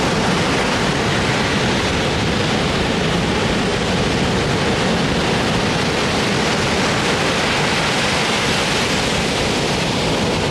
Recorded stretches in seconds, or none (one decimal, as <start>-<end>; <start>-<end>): 0.0-10.5